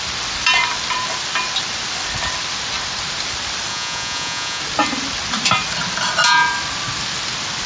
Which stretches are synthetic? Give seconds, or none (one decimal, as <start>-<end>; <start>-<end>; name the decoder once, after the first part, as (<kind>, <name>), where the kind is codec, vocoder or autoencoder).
3.7-4.6 (vocoder, Vocos)